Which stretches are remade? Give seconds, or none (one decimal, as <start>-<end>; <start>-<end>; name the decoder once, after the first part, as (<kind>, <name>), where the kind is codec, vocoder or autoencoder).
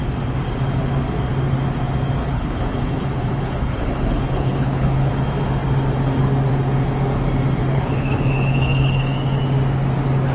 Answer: 2.2-5.1 (codec, HILCodec); 7.6-9.4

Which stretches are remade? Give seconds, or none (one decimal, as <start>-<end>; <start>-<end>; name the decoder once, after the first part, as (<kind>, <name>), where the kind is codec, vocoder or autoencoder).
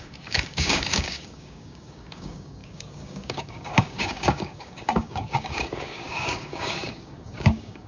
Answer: 0.0-7.9 (codec, DAC)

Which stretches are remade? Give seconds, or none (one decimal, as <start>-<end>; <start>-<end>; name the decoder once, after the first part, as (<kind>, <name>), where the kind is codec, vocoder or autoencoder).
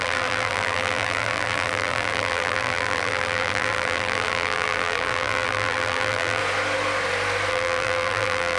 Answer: 0.0-6.4 (vocoder, BigVGAN v2); 7.5-8.6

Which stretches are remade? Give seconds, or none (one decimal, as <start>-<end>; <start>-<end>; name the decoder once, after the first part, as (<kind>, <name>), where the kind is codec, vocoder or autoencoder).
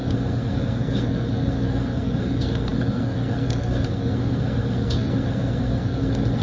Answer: 0.0-6.4 (codec, SNAC)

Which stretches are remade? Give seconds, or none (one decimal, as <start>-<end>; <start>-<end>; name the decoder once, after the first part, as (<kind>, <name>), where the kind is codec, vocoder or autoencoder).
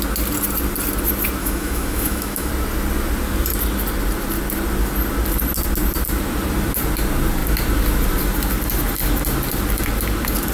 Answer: 1.4-2.5 (autoencoder, DAC-VAE)